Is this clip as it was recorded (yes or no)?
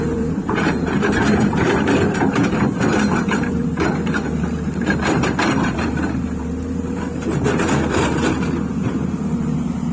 no